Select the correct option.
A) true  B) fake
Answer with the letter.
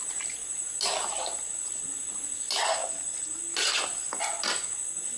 A